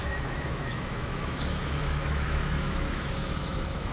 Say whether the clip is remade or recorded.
remade